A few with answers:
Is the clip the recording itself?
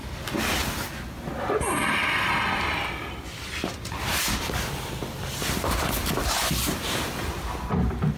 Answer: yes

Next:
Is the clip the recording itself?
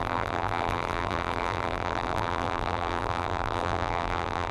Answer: no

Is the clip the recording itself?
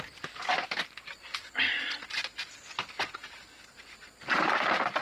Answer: yes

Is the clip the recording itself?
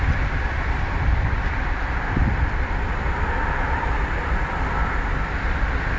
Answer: no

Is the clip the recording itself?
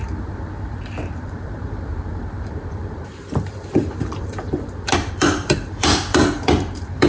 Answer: no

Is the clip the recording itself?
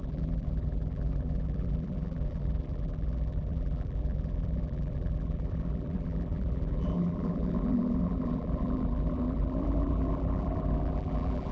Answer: no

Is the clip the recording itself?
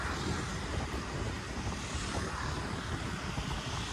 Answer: yes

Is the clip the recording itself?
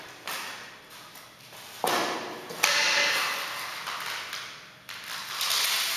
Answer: yes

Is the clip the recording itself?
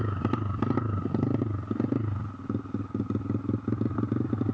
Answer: yes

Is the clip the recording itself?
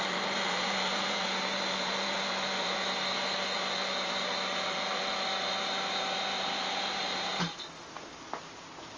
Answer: no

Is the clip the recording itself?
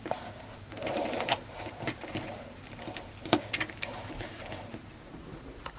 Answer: no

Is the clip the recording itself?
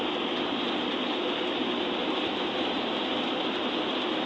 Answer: no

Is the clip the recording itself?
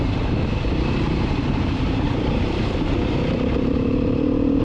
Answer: no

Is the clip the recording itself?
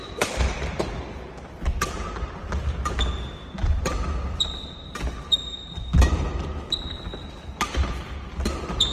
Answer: yes